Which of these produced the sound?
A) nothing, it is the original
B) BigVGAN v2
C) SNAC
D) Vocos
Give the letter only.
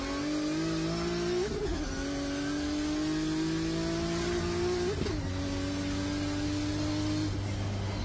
A